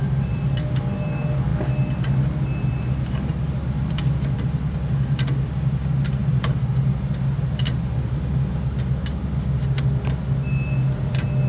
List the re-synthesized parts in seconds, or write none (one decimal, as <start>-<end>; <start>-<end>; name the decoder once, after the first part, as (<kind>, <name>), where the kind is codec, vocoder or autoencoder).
0.0-1.5 (vocoder, BigVGAN v2); 3.5-11.5